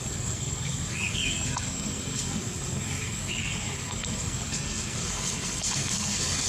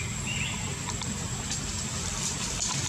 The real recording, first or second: second